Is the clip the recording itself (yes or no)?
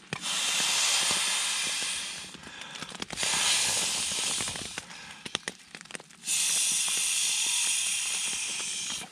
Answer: yes